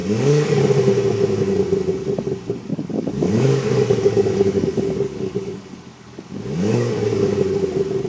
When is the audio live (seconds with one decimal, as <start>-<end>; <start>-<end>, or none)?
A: 0.6-2.7; 7.4-8.1